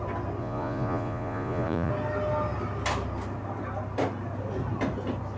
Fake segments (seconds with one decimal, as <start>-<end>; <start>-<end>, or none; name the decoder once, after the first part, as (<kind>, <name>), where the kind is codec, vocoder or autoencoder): 0.4-1.9 (vocoder, Vocos)